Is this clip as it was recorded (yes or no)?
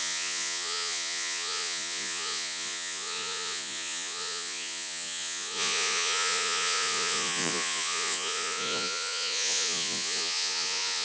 no